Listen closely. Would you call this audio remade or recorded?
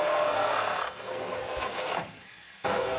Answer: remade